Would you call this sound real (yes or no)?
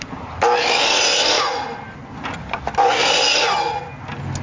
yes